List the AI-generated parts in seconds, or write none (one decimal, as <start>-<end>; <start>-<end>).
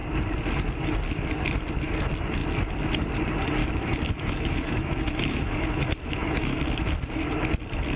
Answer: 3.6-6.9